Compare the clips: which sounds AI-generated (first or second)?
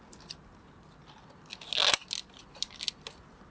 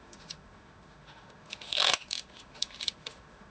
second